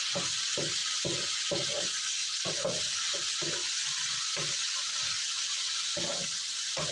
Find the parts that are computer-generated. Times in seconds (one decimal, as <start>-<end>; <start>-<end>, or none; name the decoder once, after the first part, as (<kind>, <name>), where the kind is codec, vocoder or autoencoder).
2.2-2.8 (vocoder, BigVGAN v2)